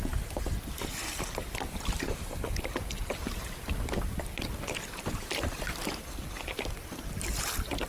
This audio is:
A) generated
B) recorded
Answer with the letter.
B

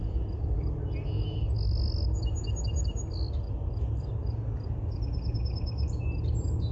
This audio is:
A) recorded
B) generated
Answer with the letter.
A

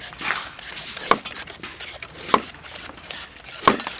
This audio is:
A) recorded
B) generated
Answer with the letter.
A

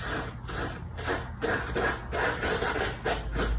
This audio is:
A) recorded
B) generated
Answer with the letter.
A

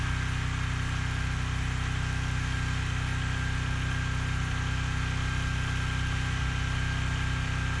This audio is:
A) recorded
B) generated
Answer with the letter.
A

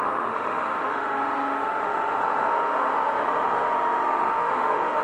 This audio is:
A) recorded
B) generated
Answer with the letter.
B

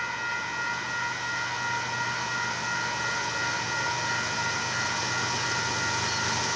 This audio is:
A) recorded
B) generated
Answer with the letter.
A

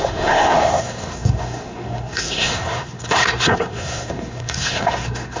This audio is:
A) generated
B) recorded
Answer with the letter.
A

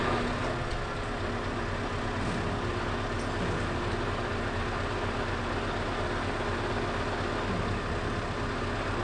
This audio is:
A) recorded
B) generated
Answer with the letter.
A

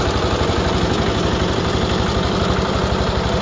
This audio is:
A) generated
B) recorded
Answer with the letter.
A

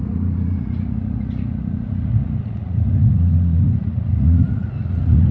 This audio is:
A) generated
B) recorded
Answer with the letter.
A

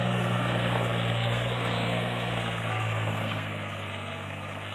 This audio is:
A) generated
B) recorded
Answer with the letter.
A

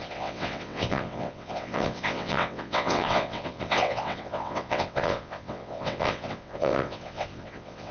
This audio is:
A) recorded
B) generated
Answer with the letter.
B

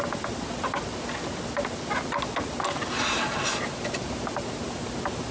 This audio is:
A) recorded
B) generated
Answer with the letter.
A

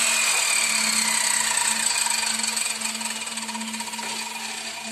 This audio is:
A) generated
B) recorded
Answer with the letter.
B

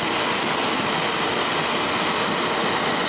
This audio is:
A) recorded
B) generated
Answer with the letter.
A